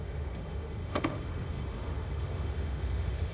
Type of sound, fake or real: fake